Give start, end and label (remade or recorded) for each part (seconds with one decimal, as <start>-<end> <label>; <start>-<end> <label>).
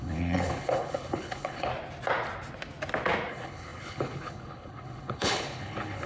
0.0-1.7 remade; 1.7-3.3 recorded; 3.3-6.1 remade